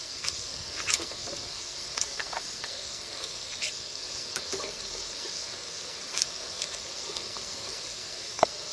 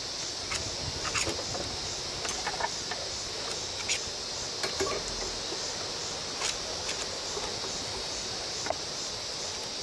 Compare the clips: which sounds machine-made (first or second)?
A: first